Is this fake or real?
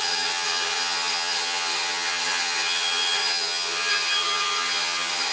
fake